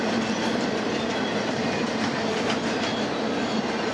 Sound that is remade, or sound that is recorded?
remade